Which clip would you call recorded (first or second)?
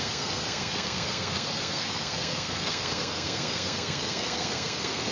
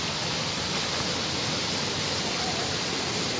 second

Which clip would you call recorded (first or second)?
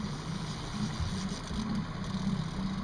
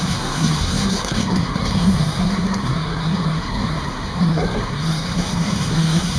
first